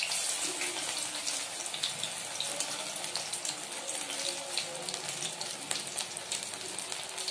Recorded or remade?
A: recorded